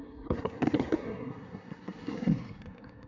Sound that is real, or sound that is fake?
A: fake